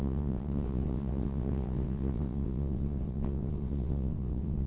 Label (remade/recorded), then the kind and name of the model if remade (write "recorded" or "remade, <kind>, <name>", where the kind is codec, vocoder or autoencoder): remade, vocoder, WaveNeXt